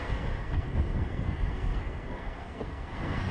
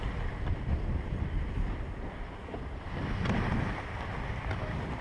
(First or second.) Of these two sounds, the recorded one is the second